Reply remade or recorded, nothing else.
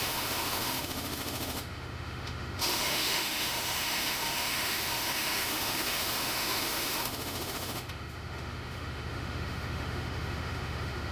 remade